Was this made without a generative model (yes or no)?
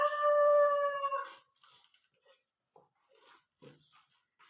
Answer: no